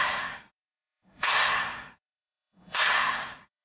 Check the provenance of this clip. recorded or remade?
remade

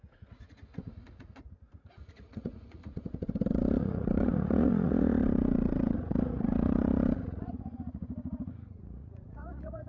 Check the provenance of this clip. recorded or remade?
remade